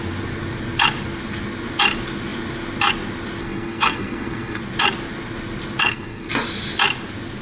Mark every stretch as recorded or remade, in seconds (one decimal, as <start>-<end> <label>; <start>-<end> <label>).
0.0-3.4 recorded; 3.4-4.6 remade; 4.6-5.8 recorded; 5.8-6.3 remade; 6.3-7.4 recorded